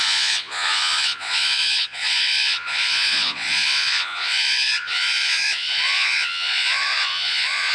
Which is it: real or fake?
fake